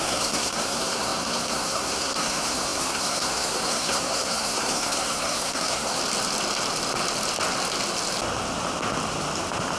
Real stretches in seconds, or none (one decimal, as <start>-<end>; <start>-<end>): 6.0-9.8